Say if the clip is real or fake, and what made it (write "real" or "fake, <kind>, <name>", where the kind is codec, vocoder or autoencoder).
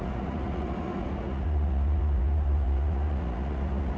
fake, vocoder, Vocos